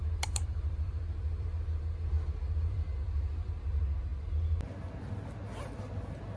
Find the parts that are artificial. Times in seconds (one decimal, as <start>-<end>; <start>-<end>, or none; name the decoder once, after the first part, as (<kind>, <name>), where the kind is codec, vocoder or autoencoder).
0.0-3.5 (vocoder, BigVGAN v2)